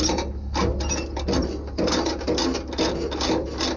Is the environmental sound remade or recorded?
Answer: recorded